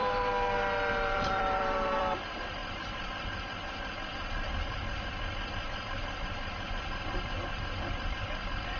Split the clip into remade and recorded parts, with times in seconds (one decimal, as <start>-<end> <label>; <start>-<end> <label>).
0.0-0.9 recorded; 0.9-8.8 remade